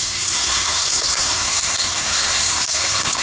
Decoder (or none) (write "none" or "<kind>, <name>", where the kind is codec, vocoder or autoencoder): codec, SNAC